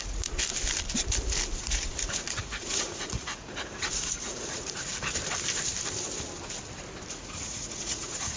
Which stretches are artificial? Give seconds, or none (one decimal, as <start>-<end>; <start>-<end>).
0.0-0.4; 1.6-4.9; 7.1-8.4